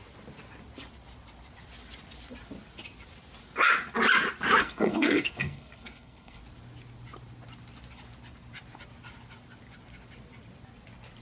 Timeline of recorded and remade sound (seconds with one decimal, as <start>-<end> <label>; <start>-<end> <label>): 0.0-4.6 recorded; 4.6-6.4 remade; 6.4-11.2 recorded